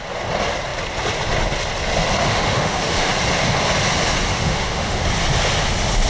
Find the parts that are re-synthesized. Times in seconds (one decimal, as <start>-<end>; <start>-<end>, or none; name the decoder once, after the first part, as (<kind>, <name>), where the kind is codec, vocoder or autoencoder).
2.2-3.1 (autoencoder, DAC-VAE); 4.3-5.0